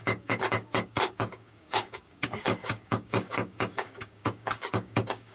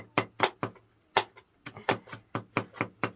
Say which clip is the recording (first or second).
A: second